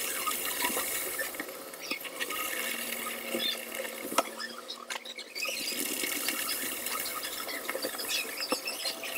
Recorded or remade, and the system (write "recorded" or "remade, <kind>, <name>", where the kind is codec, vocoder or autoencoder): recorded